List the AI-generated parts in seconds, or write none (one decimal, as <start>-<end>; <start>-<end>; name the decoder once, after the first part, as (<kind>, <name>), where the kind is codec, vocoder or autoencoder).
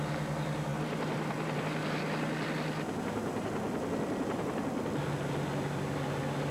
0.7-1.6 (vocoder, BigVGAN v2); 3.4-5.0